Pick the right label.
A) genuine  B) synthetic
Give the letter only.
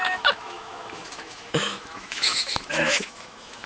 B